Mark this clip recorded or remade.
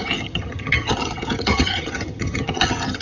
remade